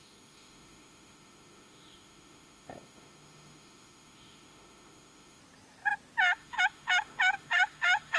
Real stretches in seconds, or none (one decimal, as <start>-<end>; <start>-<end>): 5.4-6.3